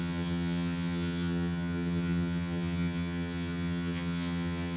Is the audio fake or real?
fake